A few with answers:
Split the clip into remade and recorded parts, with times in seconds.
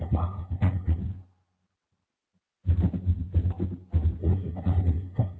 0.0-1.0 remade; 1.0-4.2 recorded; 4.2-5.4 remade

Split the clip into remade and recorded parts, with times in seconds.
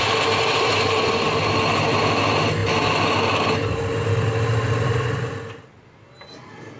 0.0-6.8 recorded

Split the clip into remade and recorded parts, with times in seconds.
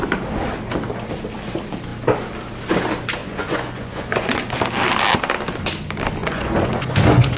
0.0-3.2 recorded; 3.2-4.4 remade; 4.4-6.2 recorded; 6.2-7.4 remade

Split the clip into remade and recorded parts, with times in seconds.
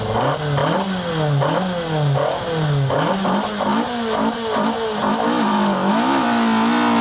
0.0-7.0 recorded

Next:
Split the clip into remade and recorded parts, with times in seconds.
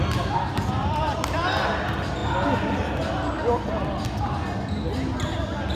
0.0-0.8 recorded; 0.8-1.6 remade; 1.6-5.7 recorded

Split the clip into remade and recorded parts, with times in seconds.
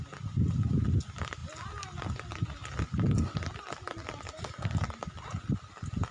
0.0-6.1 recorded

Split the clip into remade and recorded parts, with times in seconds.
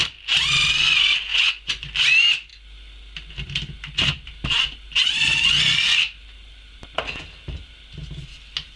0.0-1.3 recorded; 1.3-1.9 remade; 1.9-8.8 recorded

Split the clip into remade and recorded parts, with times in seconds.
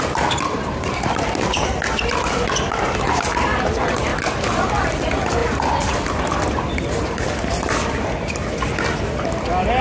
0.0-9.8 recorded